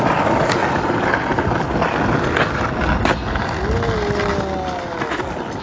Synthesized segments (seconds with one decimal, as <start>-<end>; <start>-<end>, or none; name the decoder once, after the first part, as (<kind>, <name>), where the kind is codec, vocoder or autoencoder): none